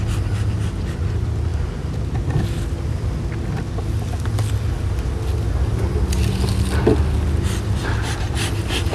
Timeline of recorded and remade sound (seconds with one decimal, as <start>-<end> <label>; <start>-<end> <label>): 0.0-8.9 recorded